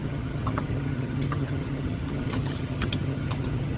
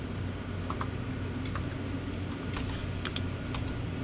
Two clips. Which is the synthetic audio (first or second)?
first